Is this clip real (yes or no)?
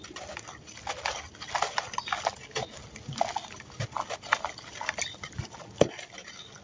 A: yes